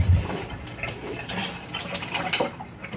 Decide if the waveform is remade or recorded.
recorded